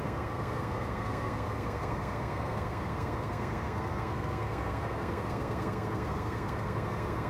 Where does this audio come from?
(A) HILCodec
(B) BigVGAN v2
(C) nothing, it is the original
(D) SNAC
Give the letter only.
D